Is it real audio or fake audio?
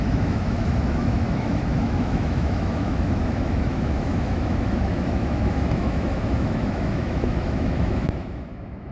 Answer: fake